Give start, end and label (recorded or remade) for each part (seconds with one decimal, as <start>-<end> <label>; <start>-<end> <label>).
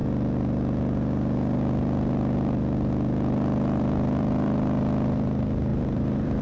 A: 0.0-5.7 recorded; 5.7-6.4 remade